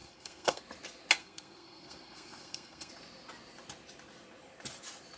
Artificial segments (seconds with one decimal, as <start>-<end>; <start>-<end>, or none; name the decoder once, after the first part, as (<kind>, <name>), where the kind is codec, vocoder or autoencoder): 0.0-0.6 (codec, SNAC); 1.2-2.9